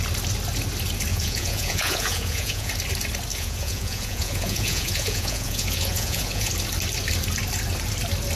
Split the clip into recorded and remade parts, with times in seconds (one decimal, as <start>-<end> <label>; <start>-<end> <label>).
0.0-1.1 recorded; 1.1-2.7 remade; 2.7-3.3 recorded; 3.3-6.5 remade; 6.5-8.4 recorded

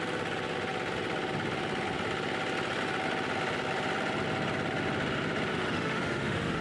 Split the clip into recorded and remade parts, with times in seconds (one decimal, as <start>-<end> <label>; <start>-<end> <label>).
0.0-5.5 recorded; 5.5-6.6 remade

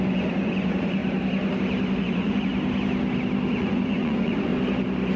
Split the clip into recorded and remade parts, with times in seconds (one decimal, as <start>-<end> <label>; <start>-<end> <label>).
0.0-1.0 remade; 1.0-2.0 recorded; 2.0-2.5 remade; 2.5-3.5 recorded; 3.5-4.5 remade; 4.5-5.2 recorded

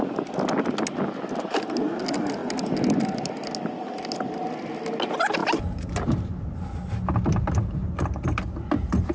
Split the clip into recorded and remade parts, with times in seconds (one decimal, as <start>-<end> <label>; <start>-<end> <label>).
0.0-5.4 recorded; 5.4-6.2 remade; 6.2-9.1 recorded

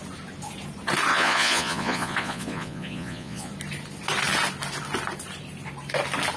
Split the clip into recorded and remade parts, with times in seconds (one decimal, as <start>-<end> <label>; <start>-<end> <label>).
0.0-1.1 recorded; 1.1-3.5 remade; 3.5-6.4 recorded